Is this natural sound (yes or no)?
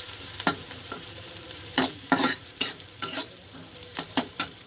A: no